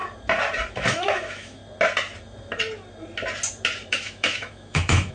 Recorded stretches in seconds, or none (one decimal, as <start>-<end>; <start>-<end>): 0.0-0.7; 1.6-3.9